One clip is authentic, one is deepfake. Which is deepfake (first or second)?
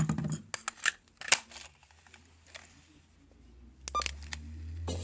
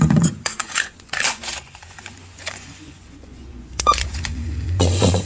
second